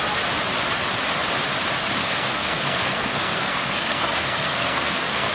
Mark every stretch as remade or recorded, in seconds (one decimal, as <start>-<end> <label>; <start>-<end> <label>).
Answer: 0.0-2.0 recorded; 2.0-5.3 remade

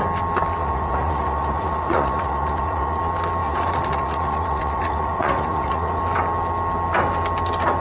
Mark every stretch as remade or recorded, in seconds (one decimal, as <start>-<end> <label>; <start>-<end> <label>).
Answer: 0.0-0.6 recorded; 0.6-3.0 remade; 3.0-3.4 recorded; 3.4-6.0 remade; 6.0-7.8 recorded

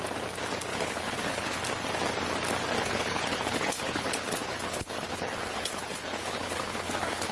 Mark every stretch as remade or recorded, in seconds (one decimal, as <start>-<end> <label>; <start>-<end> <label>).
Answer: 0.0-0.7 recorded; 0.7-1.6 remade; 1.6-2.8 recorded; 2.8-7.3 remade

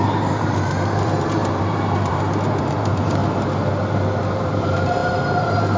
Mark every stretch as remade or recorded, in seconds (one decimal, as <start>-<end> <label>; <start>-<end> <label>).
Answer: 0.0-3.2 remade; 3.2-4.3 recorded; 4.3-5.8 remade